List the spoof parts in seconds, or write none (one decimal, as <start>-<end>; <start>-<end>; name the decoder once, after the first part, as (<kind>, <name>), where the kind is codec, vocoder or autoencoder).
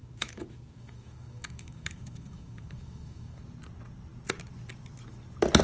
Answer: 0.0-3.4 (autoencoder, DAC-VAE)